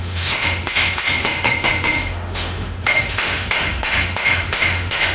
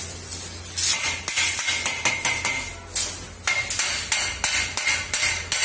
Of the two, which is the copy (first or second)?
first